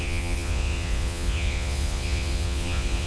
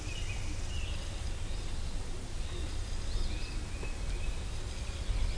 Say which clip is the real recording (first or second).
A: second